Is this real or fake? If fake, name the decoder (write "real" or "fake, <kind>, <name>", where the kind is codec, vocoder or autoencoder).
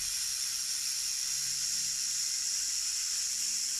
real